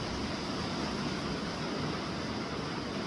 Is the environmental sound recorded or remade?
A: recorded